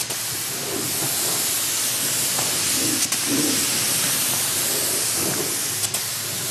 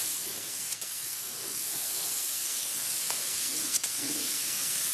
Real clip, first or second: first